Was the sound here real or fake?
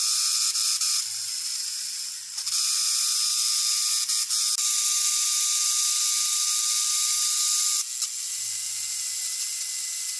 real